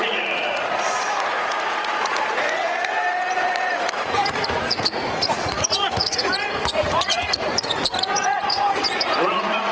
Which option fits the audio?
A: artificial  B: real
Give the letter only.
A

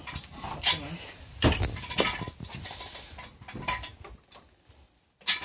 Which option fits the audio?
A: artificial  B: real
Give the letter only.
B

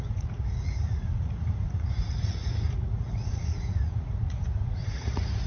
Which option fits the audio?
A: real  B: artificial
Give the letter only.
B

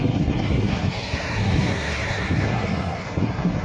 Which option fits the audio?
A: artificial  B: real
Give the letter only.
A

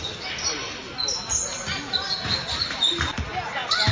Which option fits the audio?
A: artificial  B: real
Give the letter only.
B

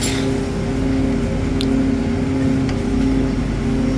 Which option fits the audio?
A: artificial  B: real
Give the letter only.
B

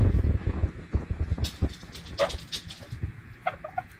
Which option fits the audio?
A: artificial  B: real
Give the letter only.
B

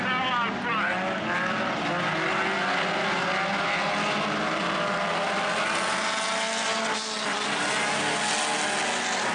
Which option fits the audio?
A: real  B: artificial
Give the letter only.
A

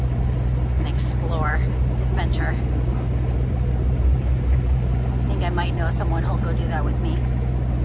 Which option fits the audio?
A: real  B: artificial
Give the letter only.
A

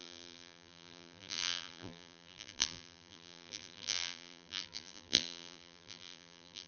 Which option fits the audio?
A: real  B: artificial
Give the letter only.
B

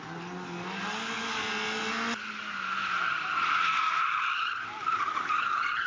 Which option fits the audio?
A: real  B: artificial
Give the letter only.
A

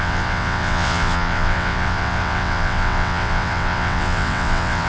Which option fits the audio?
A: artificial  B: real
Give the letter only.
A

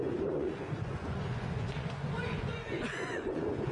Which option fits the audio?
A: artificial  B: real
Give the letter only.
A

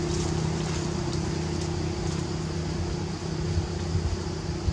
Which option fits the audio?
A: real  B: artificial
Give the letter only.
A